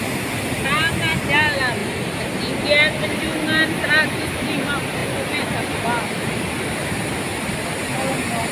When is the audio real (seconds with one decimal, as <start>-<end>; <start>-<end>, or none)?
0.0-8.5